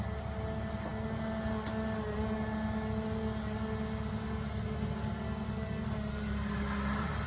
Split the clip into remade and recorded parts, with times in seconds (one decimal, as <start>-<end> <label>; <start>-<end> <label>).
0.0-7.3 recorded